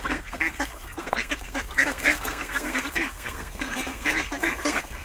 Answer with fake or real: fake